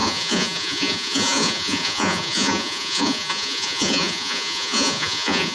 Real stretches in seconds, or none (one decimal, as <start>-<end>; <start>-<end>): none